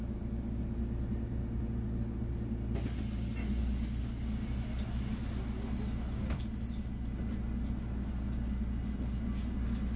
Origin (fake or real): real